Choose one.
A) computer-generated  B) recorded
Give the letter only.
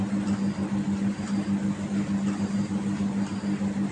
B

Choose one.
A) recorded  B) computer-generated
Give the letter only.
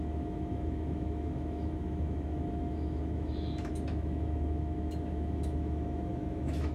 B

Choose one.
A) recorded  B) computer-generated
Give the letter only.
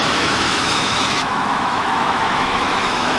B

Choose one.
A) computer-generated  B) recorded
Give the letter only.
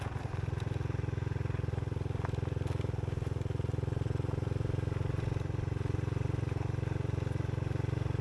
B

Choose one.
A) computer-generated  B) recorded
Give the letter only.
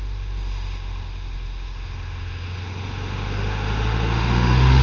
A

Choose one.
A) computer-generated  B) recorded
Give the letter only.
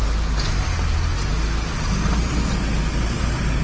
B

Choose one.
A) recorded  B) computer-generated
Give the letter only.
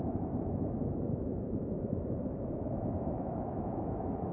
B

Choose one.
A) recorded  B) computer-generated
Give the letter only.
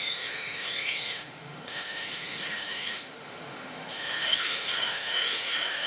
B